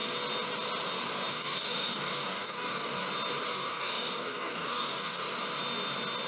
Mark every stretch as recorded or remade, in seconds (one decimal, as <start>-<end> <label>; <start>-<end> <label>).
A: 0.0-1.3 recorded; 1.3-3.0 remade; 3.0-3.5 recorded; 3.5-5.2 remade; 5.2-6.3 recorded